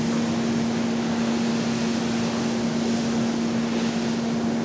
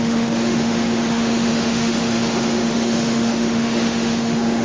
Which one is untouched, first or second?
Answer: first